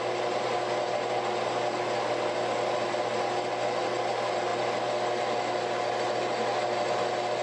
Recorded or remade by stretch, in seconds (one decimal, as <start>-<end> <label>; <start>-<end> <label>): 0.0-7.4 recorded